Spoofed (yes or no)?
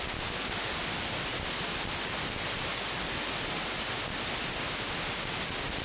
no